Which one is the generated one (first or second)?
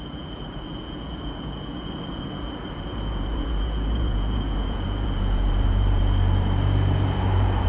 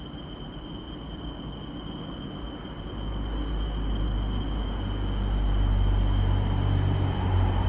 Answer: first